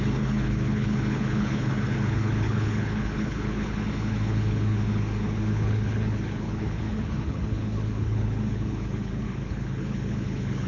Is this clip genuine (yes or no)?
no